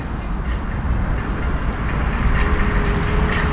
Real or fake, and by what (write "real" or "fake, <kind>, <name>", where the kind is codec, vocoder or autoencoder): real